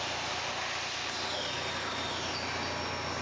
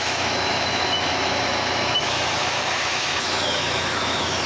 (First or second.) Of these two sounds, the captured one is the first